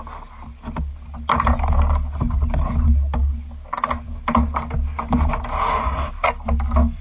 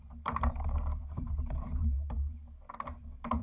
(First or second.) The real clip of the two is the first